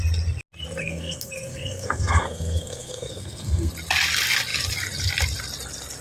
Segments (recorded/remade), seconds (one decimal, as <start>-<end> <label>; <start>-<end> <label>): 0.0-0.8 recorded; 0.8-3.7 remade; 3.7-6.0 recorded